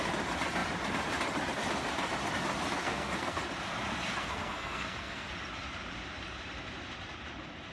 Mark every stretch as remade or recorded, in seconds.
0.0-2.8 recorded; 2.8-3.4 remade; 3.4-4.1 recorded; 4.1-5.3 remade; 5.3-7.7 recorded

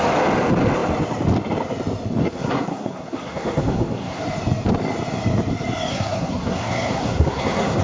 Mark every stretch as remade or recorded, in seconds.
0.0-2.2 recorded; 2.2-4.2 remade; 4.2-5.9 recorded; 5.9-7.8 remade

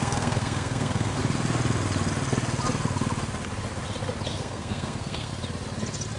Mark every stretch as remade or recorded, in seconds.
0.0-1.2 remade; 1.2-4.4 recorded; 4.4-5.3 remade; 5.3-6.2 recorded

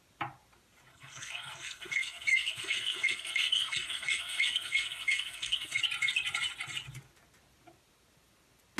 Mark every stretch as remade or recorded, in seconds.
0.0-0.9 recorded; 0.9-5.8 remade; 5.8-8.8 recorded

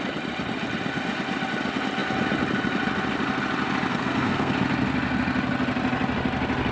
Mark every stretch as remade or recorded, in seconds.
0.0-3.9 recorded; 3.9-4.5 remade; 4.5-6.7 recorded

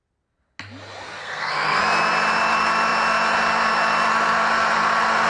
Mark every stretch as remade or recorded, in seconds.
0.0-1.2 recorded; 1.2-1.8 remade; 1.8-5.3 recorded